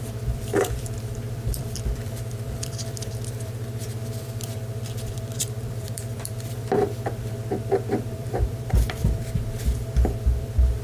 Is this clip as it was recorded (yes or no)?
no